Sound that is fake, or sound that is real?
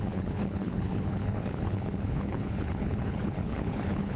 fake